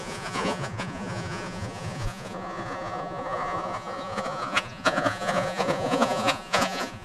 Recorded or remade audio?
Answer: remade